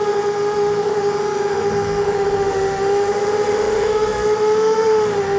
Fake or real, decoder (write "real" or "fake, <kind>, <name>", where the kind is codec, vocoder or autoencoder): fake, autoencoder, DAC-VAE